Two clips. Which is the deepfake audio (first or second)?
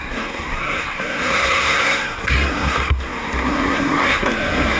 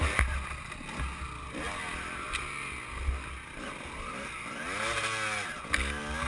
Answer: first